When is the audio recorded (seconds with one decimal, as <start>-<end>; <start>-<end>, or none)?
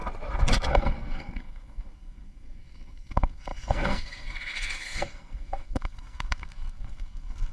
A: 0.0-0.7